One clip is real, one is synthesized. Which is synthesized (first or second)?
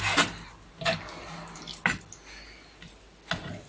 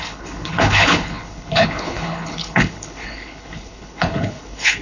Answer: second